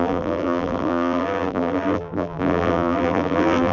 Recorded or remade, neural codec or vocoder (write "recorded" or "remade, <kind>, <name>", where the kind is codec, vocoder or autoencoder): remade, vocoder, BigVGAN v2